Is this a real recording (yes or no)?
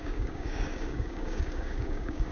no